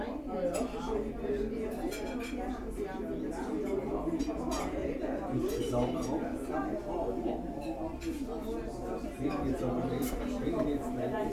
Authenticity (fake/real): real